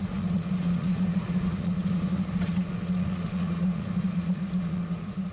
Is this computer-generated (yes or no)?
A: yes